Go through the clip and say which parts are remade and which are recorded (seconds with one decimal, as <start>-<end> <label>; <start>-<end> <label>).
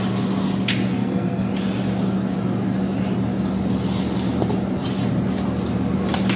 0.0-0.9 recorded; 0.9-1.5 remade; 1.5-6.4 recorded